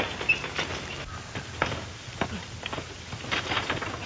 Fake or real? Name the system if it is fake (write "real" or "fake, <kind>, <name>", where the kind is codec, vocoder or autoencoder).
real